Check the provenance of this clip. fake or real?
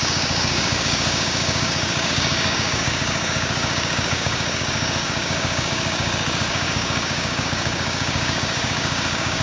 fake